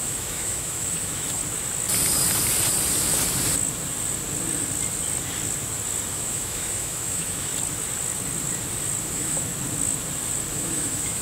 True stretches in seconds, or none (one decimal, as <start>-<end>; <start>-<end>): 1.4-6.1; 7.5-9.0; 9.5-10.5